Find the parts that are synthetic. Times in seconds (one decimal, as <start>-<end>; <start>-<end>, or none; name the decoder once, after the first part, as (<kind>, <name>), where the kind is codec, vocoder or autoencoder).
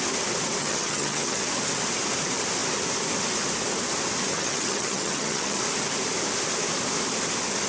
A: 0.6-1.4 (vocoder, HiFi-GAN); 4.3-5.6